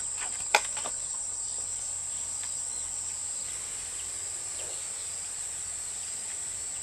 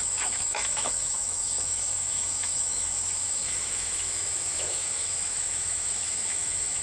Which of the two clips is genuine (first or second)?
first